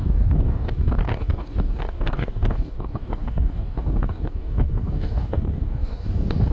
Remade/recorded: remade